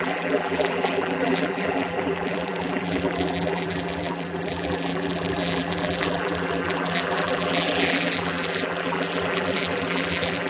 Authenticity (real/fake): fake